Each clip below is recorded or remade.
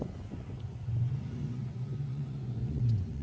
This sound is remade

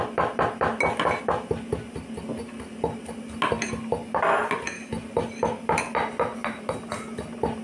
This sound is recorded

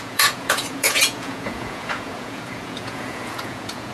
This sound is remade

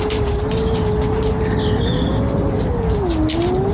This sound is recorded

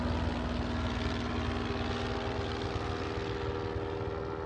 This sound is recorded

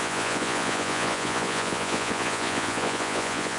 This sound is remade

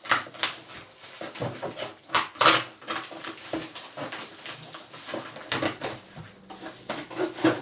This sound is recorded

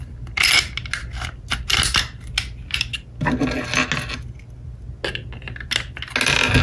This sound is recorded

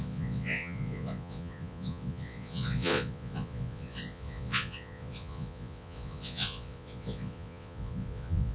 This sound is remade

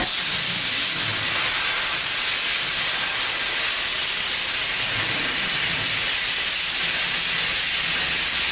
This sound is recorded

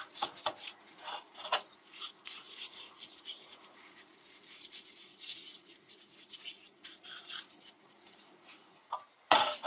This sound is remade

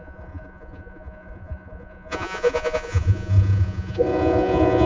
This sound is remade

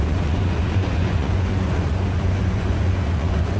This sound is remade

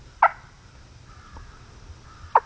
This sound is recorded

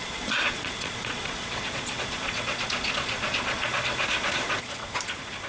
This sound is remade